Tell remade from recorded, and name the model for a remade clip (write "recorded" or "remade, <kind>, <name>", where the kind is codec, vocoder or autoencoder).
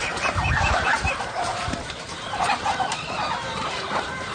remade, vocoder, BigVGAN v2